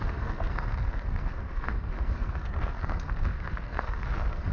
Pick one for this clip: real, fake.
fake